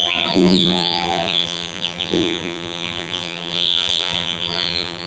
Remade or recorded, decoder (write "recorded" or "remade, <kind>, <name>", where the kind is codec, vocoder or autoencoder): remade, vocoder, BigVGAN v2